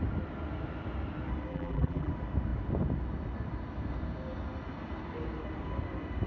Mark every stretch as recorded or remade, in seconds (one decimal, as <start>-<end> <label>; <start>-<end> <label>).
0.0-1.5 recorded; 1.5-2.1 remade; 2.1-6.3 recorded